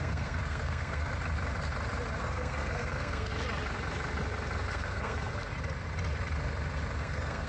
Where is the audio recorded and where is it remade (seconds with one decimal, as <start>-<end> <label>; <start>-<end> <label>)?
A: 0.0-1.1 remade; 1.1-2.2 recorded; 2.2-3.3 remade; 3.3-4.7 recorded; 4.7-5.3 remade; 5.3-7.0 recorded; 7.0-7.5 remade

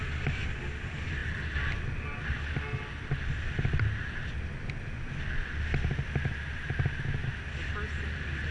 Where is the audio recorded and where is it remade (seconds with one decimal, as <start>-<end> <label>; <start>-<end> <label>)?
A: 0.0-8.5 recorded